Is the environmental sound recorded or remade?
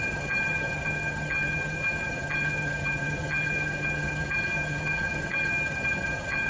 remade